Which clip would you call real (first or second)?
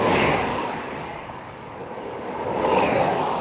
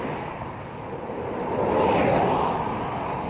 second